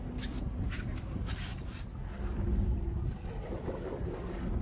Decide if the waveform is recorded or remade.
recorded